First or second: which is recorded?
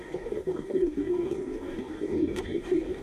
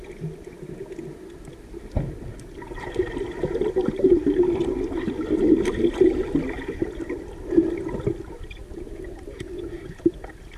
second